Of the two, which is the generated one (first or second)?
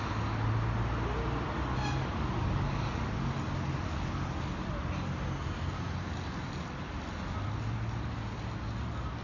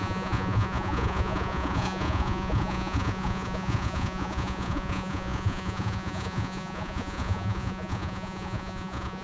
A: second